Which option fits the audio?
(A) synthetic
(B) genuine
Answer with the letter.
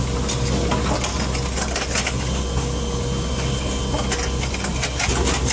B